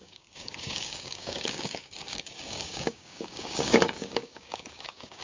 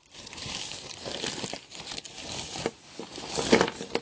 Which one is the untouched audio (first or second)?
second